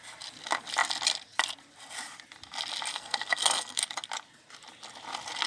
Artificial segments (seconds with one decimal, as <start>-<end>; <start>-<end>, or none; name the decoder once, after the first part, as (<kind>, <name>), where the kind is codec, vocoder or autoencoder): 2.9-3.8 (codec, SNAC)